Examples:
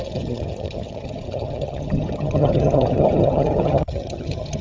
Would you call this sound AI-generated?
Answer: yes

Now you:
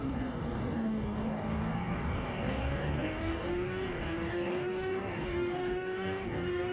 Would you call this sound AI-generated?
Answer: yes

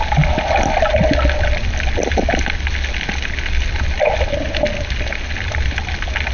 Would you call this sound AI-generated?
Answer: no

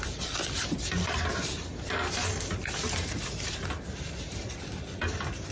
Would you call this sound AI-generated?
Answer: yes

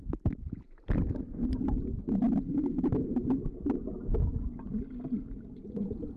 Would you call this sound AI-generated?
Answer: no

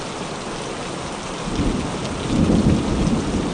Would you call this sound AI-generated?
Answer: no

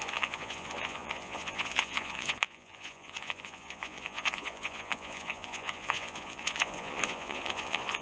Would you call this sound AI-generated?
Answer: yes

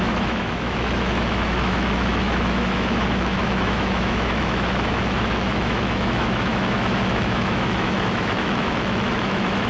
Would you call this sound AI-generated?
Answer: yes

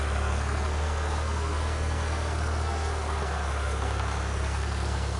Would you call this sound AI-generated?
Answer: yes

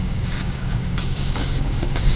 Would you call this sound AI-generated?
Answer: yes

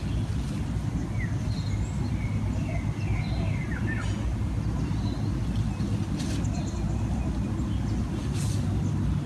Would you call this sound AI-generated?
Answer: no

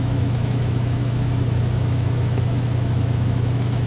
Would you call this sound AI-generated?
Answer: yes